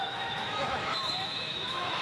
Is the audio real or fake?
fake